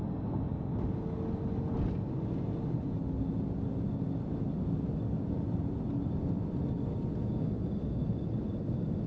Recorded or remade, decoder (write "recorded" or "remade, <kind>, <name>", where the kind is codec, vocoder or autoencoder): recorded